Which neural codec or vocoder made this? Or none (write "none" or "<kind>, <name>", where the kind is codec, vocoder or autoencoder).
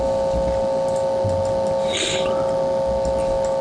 none